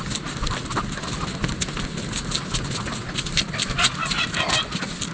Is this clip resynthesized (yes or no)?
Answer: no